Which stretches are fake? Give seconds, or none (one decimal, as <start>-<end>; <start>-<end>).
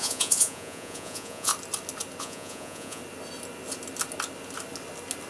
0.0-1.5; 2.2-3.0